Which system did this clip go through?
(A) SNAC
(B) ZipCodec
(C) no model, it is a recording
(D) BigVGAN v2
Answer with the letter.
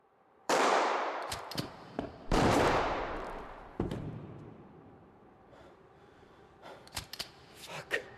D